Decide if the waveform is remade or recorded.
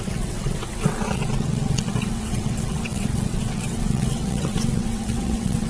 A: remade